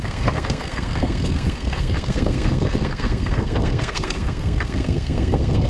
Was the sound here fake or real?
fake